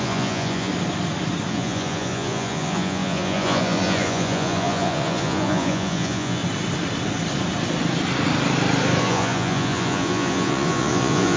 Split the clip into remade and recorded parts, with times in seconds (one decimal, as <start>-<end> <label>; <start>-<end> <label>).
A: 0.0-0.7 remade; 0.7-1.5 recorded; 1.5-6.4 remade; 6.4-9.0 recorded; 9.0-11.4 remade